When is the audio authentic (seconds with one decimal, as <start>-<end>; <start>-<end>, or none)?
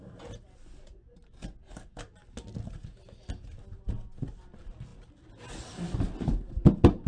0.0-7.1